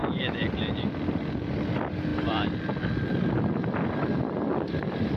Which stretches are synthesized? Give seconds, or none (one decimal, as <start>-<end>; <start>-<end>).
0.0-5.2